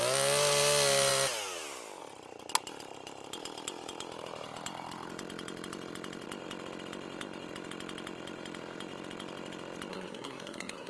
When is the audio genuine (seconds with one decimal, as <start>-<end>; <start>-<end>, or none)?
0.0-9.9